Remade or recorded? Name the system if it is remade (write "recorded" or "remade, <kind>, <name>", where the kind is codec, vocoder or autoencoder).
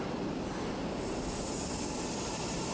recorded